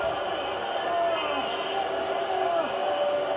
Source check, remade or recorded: recorded